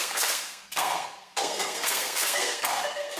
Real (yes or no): no